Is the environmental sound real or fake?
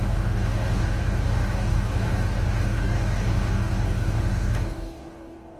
fake